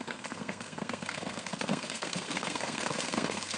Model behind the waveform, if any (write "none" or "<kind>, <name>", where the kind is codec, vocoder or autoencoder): codec, SNAC